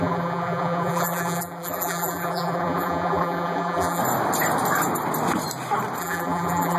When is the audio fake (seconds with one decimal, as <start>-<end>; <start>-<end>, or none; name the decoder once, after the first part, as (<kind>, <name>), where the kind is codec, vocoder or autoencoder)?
0.0-4.0 (vocoder, BigVGAN v2); 6.0-6.8